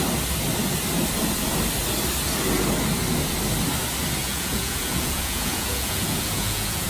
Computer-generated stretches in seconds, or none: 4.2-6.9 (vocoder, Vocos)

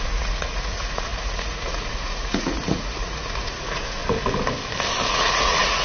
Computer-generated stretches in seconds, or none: 0.0-4.0 (vocoder, Vocos); 5.1-5.8

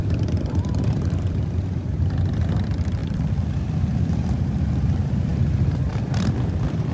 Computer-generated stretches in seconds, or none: 0.0-5.3 (vocoder, BigVGAN v2); 5.9-6.9

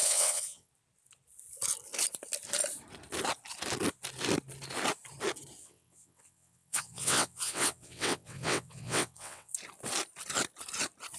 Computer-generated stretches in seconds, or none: 0.0-0.7 (vocoder, WaveNeXt); 5.6-9.5

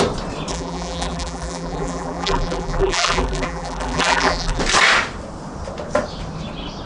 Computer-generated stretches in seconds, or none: 0.5-4.6 (vocoder, BigVGAN v2)

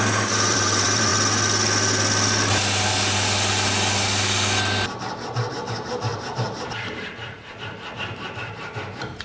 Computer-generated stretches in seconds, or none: 0.0-1.1 (vocoder, BigVGAN v2); 5.5-9.2